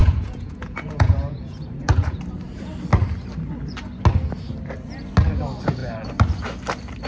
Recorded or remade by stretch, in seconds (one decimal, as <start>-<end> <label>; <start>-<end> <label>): 0.0-2.2 remade; 2.2-7.1 recorded